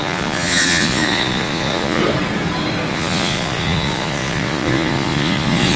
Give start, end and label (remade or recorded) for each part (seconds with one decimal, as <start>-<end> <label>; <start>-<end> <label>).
0.0-2.0 remade; 2.0-2.9 recorded; 2.9-5.8 remade